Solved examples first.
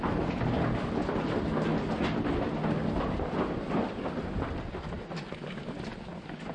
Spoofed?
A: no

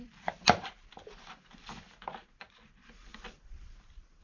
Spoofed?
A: yes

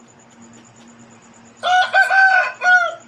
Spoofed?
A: no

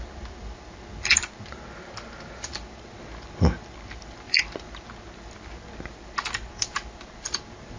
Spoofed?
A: no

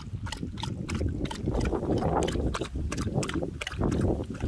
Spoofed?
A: no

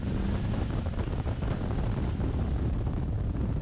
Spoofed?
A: no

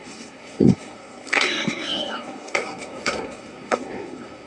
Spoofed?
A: yes